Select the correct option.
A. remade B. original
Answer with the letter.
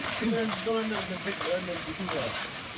A